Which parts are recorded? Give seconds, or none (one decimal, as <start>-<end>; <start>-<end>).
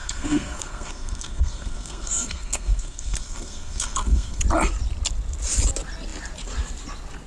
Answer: 4.4-7.3